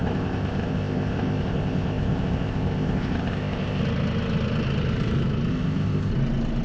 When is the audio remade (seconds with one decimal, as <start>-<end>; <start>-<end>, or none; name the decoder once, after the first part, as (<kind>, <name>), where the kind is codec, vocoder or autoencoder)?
0.0-3.8 (codec, ZipCodec); 5.5-6.1